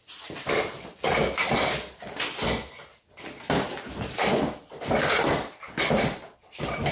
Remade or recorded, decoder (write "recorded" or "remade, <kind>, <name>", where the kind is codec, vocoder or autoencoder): recorded